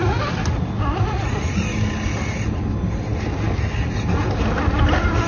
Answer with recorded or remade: recorded